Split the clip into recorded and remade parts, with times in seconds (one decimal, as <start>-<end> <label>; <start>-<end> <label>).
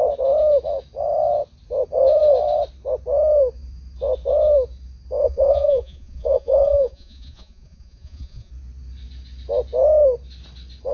0.0-5.2 recorded; 5.2-8.5 remade; 8.5-10.9 recorded